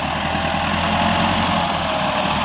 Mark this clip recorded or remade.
recorded